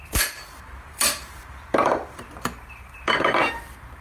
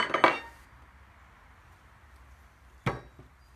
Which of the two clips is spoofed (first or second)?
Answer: first